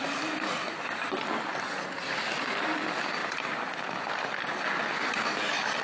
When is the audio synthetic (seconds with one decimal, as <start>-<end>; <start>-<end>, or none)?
none